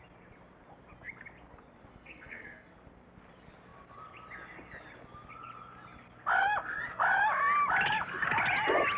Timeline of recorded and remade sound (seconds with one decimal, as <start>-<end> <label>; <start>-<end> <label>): 0.0-1.9 recorded; 1.9-2.7 remade; 2.7-9.0 recorded